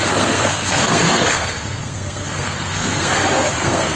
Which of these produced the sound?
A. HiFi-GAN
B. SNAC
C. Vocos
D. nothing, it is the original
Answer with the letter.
B